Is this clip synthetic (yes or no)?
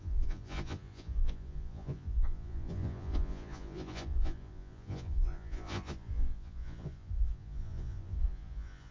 yes